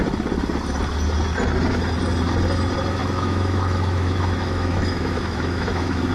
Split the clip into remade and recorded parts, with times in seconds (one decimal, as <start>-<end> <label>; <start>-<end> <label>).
0.0-3.0 recorded; 3.0-6.1 remade